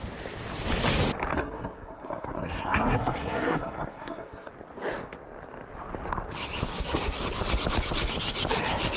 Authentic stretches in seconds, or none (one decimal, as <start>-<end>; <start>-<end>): 0.0-1.3; 4.5-6.7; 7.2-9.0